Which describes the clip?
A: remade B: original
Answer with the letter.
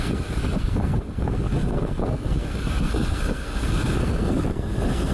A